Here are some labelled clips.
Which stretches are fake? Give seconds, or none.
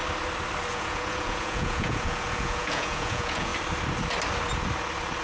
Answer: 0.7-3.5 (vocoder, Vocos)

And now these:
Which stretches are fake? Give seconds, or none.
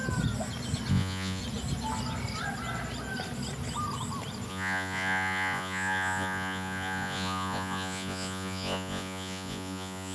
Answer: 0.9-1.4 (vocoder, Vocos); 4.5-10.1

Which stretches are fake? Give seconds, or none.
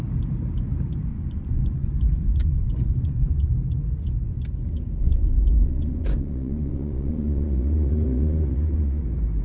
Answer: 1.1-3.5 (vocoder, Vocos); 5.0-9.0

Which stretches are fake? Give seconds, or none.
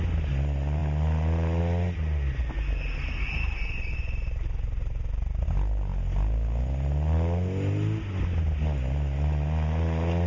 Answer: none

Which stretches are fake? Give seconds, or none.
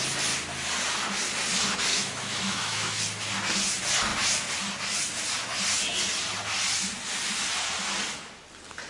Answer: 1.9-3.0 (autoencoder, DAC-VAE)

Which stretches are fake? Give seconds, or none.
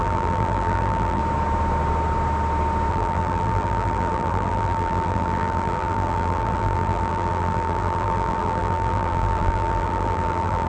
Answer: 0.0-1.2 (vocoder, BigVGAN v2); 2.9-10.7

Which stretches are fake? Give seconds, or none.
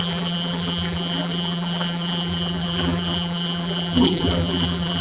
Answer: 0.0-5.0 (vocoder, BigVGAN v2)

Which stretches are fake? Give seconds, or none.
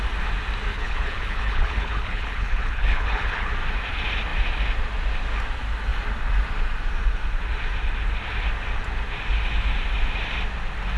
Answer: 0.7-3.5 (codec, HILCodec)